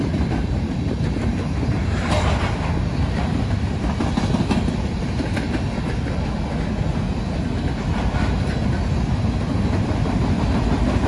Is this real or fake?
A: real